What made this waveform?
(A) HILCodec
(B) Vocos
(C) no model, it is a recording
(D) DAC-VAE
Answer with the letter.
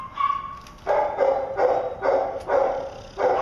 C